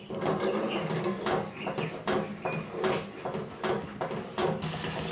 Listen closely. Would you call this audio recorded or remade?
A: recorded